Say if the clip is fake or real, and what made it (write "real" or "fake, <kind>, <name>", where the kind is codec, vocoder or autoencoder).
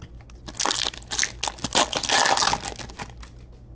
real